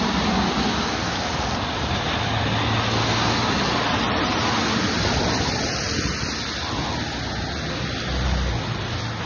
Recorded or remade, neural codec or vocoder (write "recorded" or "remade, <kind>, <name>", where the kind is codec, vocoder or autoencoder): recorded